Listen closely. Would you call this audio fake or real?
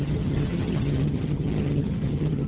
fake